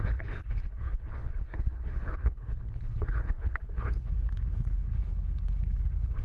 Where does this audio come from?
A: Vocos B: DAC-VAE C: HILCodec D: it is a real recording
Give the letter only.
C